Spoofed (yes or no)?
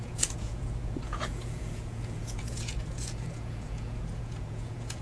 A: yes